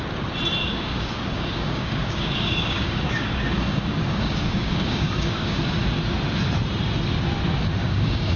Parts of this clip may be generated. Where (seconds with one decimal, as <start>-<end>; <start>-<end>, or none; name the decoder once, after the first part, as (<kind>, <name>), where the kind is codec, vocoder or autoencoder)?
0.6-5.6 (codec, DAC); 7.8-8.4